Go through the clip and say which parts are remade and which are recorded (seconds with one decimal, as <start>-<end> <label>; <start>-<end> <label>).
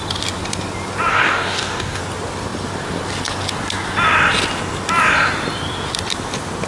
0.0-1.1 recorded; 1.1-2.0 remade; 2.0-6.7 recorded